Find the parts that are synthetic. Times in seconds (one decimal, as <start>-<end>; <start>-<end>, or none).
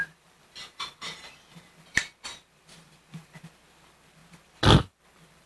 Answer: 2.0-3.2; 4.2-5.0